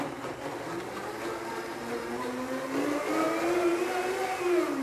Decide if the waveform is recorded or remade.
recorded